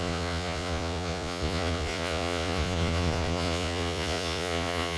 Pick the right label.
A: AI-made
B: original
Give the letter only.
A